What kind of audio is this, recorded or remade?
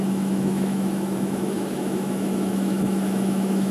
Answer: remade